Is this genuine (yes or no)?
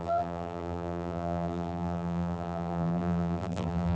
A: no